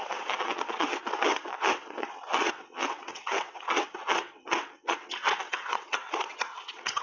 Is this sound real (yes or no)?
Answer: no